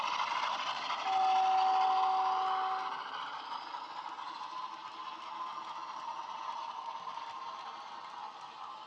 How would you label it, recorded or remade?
recorded